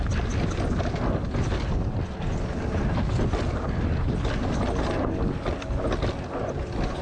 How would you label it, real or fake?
real